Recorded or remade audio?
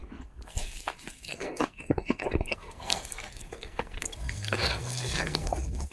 remade